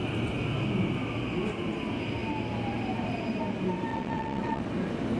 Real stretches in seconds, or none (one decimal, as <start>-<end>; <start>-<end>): 0.0-3.9; 4.6-5.2